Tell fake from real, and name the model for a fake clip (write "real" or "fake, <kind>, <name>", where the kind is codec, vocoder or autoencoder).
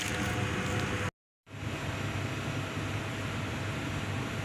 real